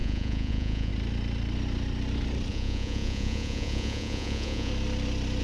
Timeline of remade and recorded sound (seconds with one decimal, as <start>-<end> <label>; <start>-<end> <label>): 0.0-0.9 remade; 0.9-2.5 recorded; 2.5-4.7 remade; 4.7-5.4 recorded